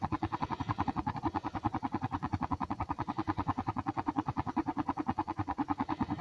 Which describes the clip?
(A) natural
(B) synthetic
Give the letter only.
B